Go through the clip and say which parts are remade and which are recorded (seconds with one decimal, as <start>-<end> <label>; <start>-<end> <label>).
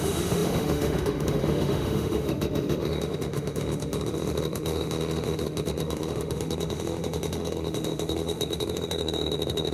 0.0-9.7 remade